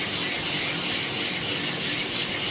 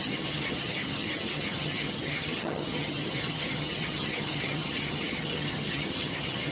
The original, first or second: first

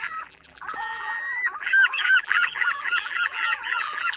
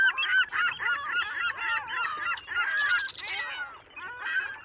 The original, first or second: second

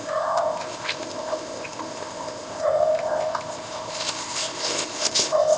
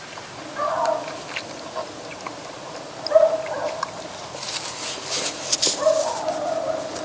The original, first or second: second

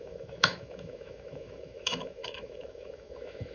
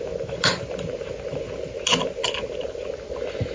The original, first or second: second